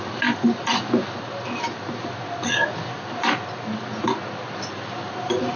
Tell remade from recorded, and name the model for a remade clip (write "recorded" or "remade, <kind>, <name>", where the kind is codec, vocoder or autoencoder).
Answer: recorded